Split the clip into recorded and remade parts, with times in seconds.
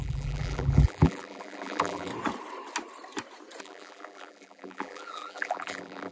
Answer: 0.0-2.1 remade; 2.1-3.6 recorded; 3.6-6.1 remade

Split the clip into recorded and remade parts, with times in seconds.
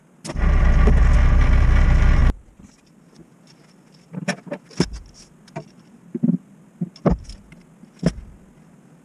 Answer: 0.0-9.0 recorded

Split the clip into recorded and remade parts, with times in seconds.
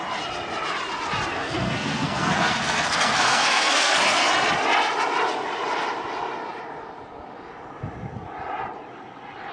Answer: 0.0-1.3 recorded; 1.3-4.3 remade; 4.3-9.5 recorded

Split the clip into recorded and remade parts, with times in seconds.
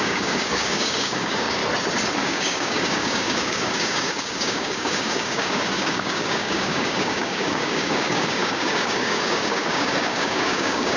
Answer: 0.0-1.6 remade; 1.6-2.2 recorded; 2.2-11.0 remade